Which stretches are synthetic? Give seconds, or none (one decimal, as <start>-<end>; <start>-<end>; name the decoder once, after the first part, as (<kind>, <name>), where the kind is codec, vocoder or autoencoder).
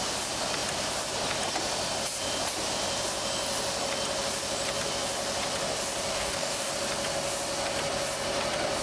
6.1-6.7 (codec, DAC)